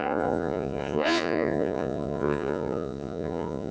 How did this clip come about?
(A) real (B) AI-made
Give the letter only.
B